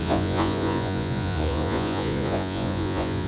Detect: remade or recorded remade